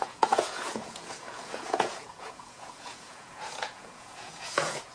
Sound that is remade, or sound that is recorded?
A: remade